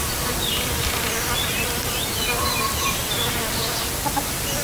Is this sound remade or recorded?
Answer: recorded